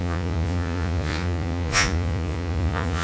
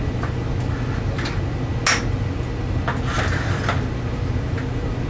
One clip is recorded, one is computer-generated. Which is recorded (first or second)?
second